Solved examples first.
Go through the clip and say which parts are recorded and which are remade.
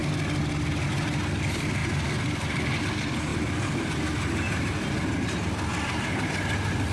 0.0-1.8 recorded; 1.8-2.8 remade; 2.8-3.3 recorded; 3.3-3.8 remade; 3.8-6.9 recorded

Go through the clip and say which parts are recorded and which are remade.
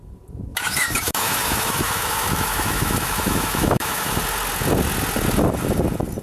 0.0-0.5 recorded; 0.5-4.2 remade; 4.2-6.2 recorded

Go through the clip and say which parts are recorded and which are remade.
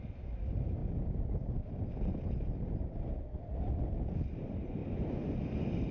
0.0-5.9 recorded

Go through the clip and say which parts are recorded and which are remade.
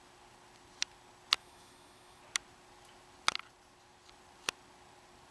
0.0-1.4 recorded; 1.4-2.2 remade; 2.2-5.3 recorded